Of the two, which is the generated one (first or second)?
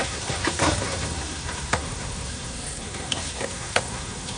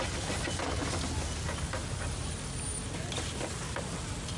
first